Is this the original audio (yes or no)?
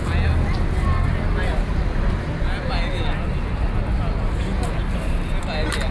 yes